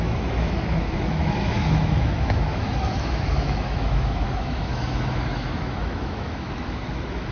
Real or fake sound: fake